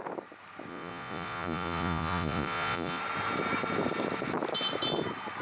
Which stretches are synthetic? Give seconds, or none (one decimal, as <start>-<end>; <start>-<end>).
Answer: 0.7-3.0